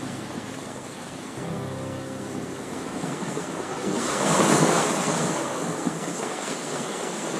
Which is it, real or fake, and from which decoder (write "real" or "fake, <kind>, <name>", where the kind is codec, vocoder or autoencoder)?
fake, codec, SNAC